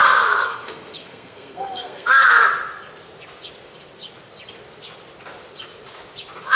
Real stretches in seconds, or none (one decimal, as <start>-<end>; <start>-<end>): 2.4-6.6